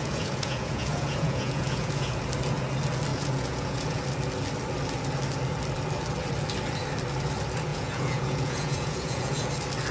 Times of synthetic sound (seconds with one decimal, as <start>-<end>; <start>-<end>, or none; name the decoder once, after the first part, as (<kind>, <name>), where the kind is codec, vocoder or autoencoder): 0.0-2.2 (vocoder, Vocos); 3.1-4.0; 7.7-9.5